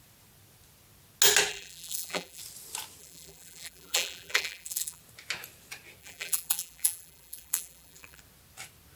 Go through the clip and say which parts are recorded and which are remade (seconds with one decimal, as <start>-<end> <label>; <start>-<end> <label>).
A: 0.0-1.5 recorded; 1.5-2.4 remade; 2.4-3.0 recorded; 3.0-5.0 remade; 5.0-6.0 recorded; 6.0-8.2 remade; 8.2-9.0 recorded